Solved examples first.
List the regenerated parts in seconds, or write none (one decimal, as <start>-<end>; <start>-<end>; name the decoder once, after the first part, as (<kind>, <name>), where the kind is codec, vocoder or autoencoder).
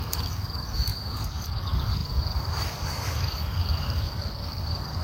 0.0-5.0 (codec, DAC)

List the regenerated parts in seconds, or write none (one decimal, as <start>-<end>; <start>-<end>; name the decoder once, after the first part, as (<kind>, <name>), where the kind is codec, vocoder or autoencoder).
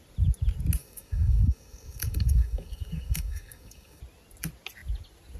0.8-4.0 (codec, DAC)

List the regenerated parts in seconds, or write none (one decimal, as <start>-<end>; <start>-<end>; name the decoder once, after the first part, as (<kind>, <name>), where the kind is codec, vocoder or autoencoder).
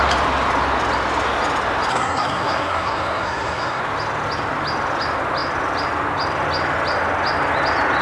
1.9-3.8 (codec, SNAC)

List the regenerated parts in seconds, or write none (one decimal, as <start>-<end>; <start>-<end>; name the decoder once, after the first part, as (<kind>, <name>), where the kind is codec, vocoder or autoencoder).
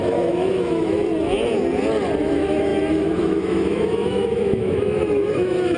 0.0-1.0 (autoencoder, DAC-VAE); 2.2-5.8